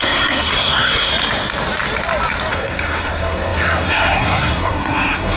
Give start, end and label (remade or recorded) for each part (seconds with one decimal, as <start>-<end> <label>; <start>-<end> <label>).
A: 0.0-1.1 remade; 1.1-2.5 recorded; 2.5-5.4 remade

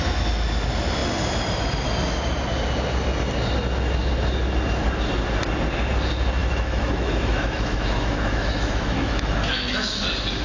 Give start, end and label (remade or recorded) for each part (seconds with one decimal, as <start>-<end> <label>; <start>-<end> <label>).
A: 0.0-6.4 recorded; 6.4-10.0 remade; 10.0-10.4 recorded

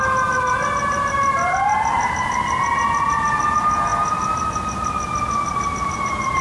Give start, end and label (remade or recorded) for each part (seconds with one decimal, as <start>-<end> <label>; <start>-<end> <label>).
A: 0.0-6.4 recorded

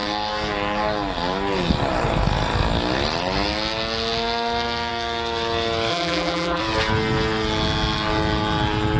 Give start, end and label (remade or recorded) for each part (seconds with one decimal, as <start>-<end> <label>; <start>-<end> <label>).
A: 0.0-5.9 recorded; 5.9-6.6 remade; 6.6-9.0 recorded

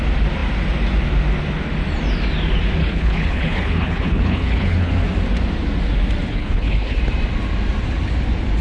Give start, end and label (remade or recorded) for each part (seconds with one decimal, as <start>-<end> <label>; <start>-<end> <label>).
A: 0.0-2.8 recorded; 2.8-4.9 remade; 4.9-6.3 recorded; 6.3-7.0 remade; 7.0-8.6 recorded

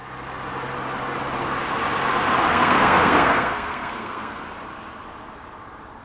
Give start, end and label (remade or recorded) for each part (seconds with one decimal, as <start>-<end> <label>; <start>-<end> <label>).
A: 0.0-2.4 recorded; 2.4-4.4 remade; 4.4-6.0 recorded

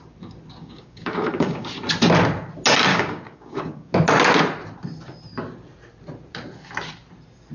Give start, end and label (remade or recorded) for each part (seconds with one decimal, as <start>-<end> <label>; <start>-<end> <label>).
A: 0.0-0.6 recorded; 0.6-1.7 remade; 1.7-2.9 recorded; 2.9-3.9 remade; 3.9-7.5 recorded